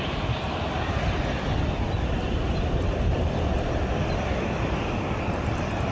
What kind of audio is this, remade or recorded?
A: recorded